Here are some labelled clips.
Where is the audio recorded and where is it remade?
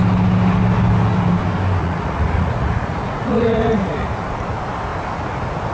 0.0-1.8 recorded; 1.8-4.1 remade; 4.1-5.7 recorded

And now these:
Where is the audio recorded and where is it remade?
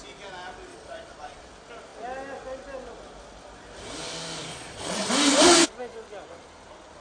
0.0-0.7 recorded; 0.7-1.4 remade; 1.4-4.5 recorded; 4.5-5.1 remade; 5.1-7.0 recorded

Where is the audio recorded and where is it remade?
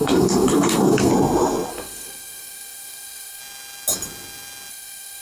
0.0-1.1 remade; 1.1-1.7 recorded; 1.7-3.4 remade; 3.4-4.7 recorded; 4.7-5.2 remade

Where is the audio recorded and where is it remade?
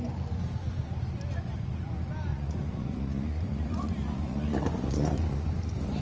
0.0-2.3 recorded; 2.3-5.5 remade; 5.5-6.0 recorded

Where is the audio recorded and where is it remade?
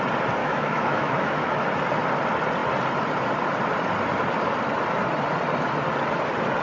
0.0-0.4 recorded; 0.4-1.5 remade; 1.5-6.6 recorded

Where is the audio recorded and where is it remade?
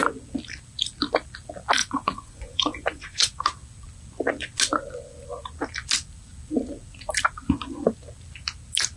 0.0-1.8 recorded; 1.8-3.4 remade; 3.4-9.0 recorded